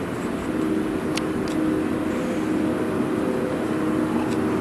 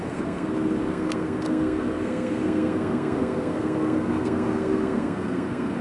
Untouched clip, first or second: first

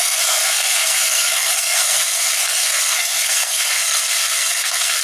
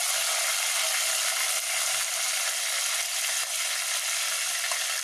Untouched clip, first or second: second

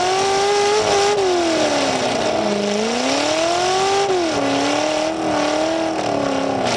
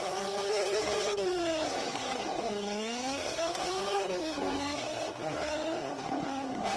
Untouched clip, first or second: first